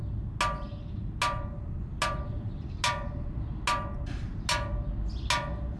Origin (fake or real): real